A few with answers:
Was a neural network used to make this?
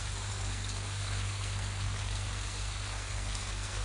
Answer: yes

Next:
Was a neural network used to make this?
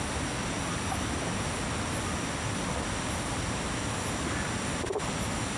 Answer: no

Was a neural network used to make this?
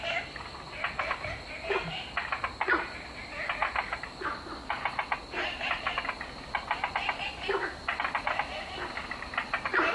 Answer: no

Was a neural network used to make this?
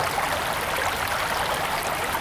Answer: no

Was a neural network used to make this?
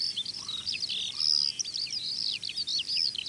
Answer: no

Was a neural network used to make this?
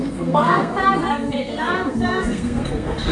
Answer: yes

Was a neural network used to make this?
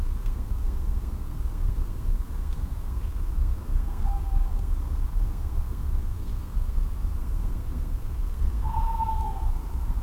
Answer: yes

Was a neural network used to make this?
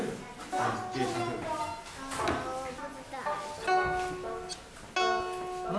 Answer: no